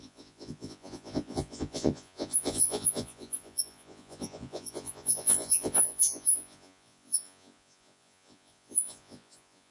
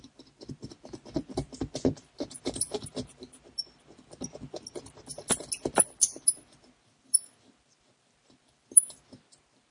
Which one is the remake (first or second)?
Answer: first